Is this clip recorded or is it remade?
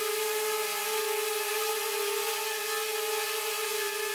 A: recorded